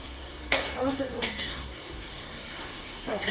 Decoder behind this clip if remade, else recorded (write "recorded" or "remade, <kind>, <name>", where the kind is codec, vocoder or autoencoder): remade, codec, SNAC